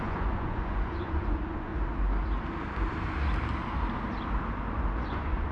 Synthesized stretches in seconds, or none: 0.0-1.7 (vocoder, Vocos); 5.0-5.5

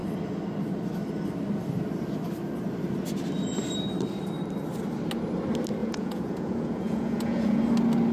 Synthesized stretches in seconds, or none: 5.8-7.6 (vocoder, Vocos)

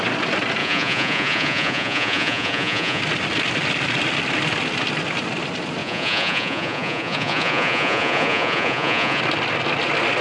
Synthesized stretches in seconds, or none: 0.6-3.0 (vocoder, Vocos); 5.8-9.2

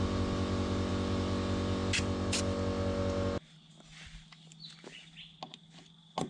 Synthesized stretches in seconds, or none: none

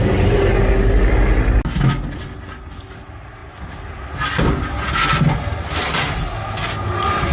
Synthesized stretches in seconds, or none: none

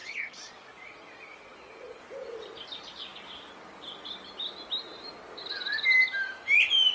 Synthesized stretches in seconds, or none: 0.0-2.0 (vocoder, Vocos)

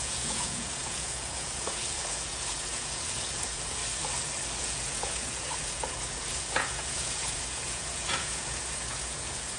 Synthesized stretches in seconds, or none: 0.0-3.8 (vocoder, Vocos); 4.6-9.6